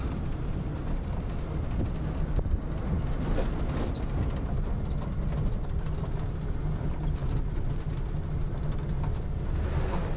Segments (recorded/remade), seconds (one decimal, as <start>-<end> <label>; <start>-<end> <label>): 0.0-10.2 recorded